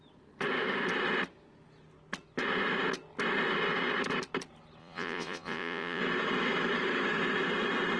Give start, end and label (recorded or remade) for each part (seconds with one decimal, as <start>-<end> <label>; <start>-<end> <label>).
0.0-4.8 recorded; 4.8-6.0 remade; 6.0-8.0 recorded